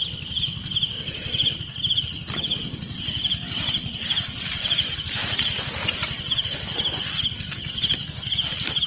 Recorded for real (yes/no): no